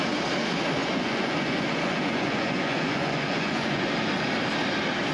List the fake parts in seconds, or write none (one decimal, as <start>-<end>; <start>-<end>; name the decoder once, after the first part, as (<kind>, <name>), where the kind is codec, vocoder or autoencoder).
0.8-3.9 (vocoder, Vocos)